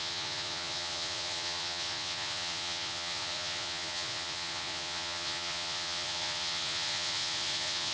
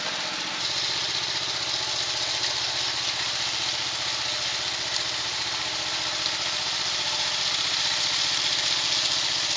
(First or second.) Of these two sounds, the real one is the second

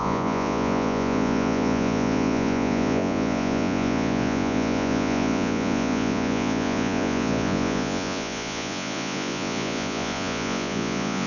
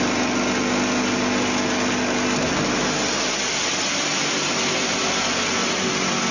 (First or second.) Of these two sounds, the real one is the second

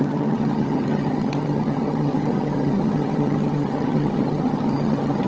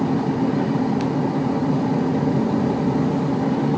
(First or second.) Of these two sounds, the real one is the second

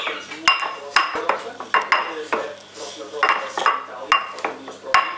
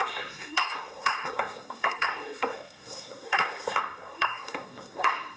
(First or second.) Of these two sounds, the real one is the first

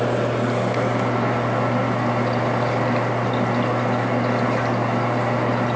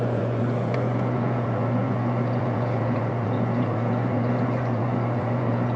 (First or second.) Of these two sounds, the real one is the first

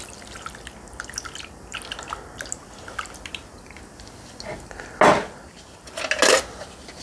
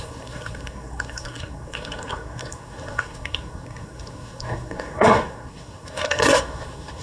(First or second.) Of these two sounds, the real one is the first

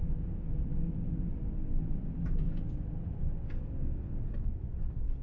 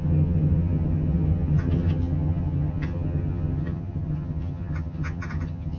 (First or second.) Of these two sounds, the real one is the first